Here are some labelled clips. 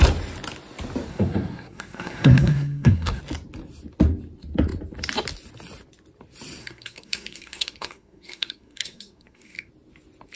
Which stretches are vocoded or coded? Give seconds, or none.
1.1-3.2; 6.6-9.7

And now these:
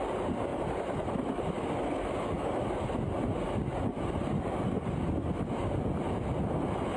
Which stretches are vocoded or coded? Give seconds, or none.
0.5-1.6

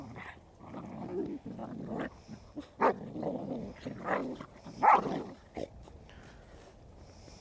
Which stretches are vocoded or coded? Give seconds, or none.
none

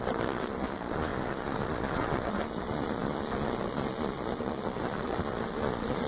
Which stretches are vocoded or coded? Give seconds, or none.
0.0-6.1

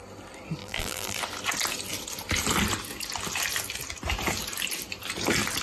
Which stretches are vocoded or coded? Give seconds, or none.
0.6-1.2

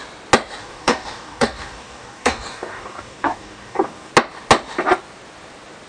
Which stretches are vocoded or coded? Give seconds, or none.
0.6-4.1